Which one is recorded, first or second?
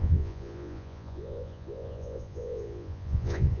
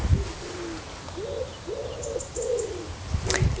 second